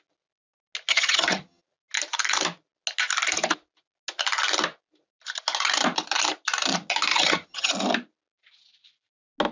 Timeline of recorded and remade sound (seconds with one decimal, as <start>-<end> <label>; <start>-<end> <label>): 0.0-0.9 recorded; 0.9-1.6 remade; 1.6-7.1 recorded; 7.1-7.7 remade; 7.7-9.5 recorded

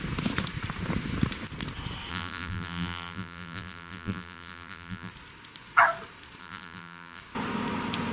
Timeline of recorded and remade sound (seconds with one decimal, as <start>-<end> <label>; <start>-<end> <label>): 0.0-2.1 recorded; 2.1-5.1 remade; 5.1-6.4 recorded; 6.4-7.2 remade; 7.2-8.1 recorded

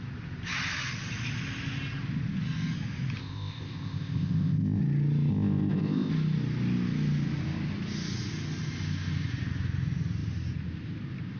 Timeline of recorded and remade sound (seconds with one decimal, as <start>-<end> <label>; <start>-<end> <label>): 0.0-3.2 recorded; 3.2-4.8 remade; 4.8-5.3 recorded; 5.3-6.1 remade; 6.1-11.4 recorded

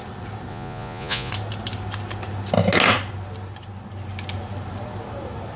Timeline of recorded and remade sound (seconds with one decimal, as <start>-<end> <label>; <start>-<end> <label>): 0.0-0.5 recorded; 0.5-1.3 remade; 1.3-5.6 recorded